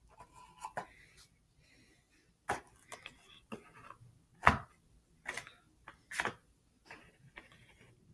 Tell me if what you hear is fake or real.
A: real